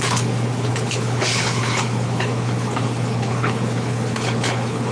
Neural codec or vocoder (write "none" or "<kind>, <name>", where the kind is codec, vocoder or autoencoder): codec, HILCodec